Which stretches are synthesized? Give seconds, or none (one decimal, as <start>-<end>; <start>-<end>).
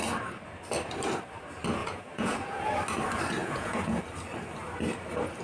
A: 1.8-2.8; 3.4-4.0